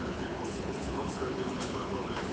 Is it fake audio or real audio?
fake